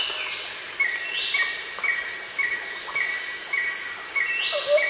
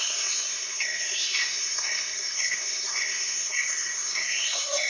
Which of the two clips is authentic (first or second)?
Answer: first